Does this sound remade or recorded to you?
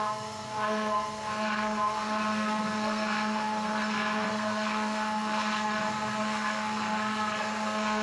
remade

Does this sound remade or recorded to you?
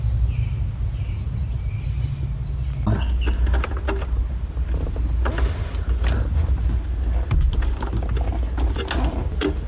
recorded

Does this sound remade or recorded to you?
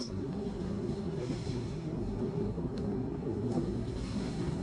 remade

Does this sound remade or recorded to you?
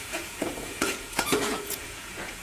remade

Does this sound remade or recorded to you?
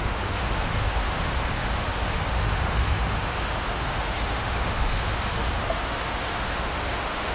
remade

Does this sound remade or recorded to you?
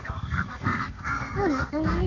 remade